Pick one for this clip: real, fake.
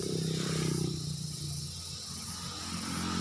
real